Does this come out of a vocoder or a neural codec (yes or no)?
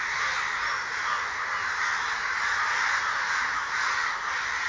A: no